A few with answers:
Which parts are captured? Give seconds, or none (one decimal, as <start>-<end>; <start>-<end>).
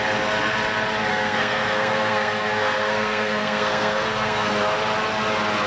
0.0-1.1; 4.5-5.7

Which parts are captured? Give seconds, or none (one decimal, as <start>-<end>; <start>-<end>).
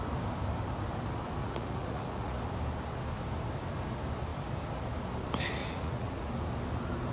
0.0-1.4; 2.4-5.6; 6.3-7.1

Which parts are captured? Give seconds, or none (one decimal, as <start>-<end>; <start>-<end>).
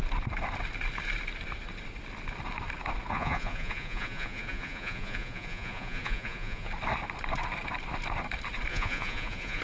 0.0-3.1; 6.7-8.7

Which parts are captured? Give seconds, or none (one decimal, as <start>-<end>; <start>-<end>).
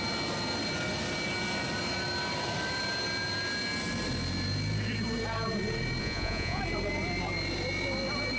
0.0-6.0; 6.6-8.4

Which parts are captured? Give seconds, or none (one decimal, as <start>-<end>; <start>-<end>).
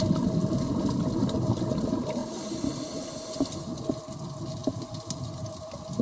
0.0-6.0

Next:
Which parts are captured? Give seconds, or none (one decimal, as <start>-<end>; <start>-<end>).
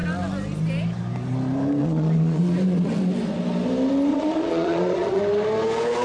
0.0-1.8; 2.4-4.1; 5.2-6.0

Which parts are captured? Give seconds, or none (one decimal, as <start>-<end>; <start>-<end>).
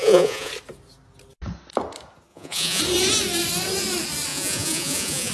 0.5-2.3; 2.8-4.3